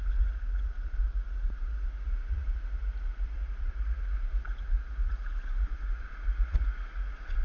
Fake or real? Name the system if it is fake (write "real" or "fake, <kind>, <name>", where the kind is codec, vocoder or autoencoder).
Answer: fake, vocoder, Vocos